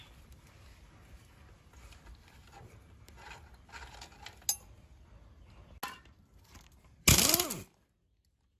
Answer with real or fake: real